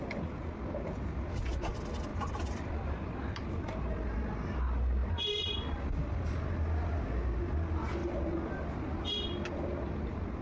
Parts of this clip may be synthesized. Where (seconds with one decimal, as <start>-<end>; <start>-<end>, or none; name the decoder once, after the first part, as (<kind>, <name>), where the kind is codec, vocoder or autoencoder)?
2.1-3.7 (vocoder, BigVGAN v2); 5.0-5.6